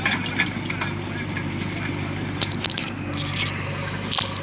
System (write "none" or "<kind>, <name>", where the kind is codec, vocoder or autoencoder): none